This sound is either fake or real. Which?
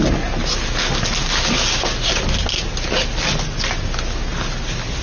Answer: real